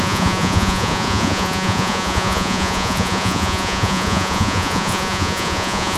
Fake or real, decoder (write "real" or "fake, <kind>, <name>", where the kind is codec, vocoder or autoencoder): fake, vocoder, Vocos